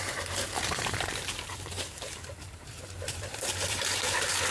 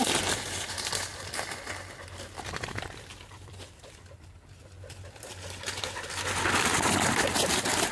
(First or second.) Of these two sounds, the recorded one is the second